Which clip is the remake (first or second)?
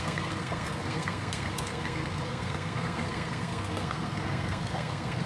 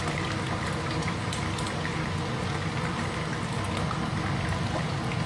first